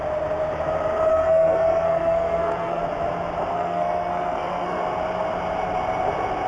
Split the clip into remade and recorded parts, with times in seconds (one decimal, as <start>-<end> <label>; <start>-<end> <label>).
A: 0.0-1.1 recorded; 1.1-2.8 remade; 2.8-3.5 recorded; 3.5-4.8 remade; 4.8-6.5 recorded